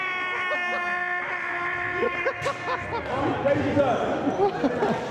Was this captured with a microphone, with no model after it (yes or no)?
yes